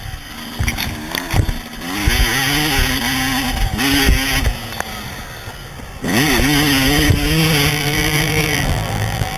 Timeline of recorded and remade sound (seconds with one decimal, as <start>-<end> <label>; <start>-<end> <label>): 0.0-7.7 recorded; 7.7-9.4 remade